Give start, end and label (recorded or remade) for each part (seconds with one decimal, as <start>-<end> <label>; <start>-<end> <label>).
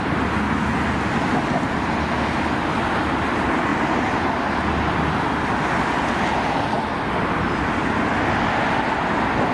0.0-9.5 recorded